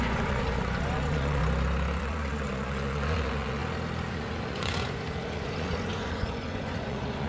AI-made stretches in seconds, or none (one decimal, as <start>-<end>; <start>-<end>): 0.0-1.4; 2.0-3.6; 4.1-7.3